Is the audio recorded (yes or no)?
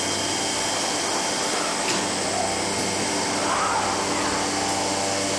yes